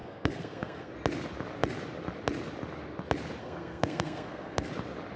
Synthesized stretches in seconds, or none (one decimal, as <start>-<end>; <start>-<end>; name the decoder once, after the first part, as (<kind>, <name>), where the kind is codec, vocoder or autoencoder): 0.0-0.9 (codec, SNAC); 3.4-4.7